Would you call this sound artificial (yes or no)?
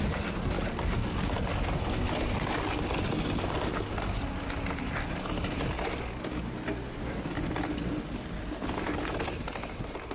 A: no